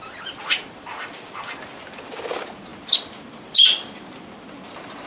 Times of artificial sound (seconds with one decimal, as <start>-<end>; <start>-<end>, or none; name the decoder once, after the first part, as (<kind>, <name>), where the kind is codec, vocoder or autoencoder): 2.7-5.1 (vocoder, BigVGAN v2)